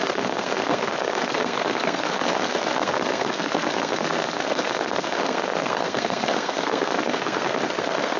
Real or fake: fake